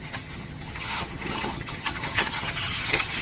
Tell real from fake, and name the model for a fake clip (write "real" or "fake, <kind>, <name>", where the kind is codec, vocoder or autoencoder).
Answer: fake, vocoder, HiFi-GAN